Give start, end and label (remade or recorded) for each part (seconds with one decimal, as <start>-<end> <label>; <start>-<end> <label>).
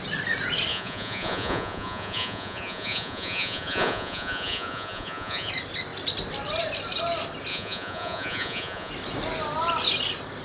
0.0-0.7 recorded; 0.7-5.5 remade; 5.5-7.5 recorded; 7.5-8.9 remade; 8.9-10.4 recorded